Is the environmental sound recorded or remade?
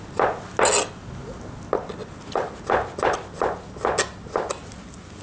recorded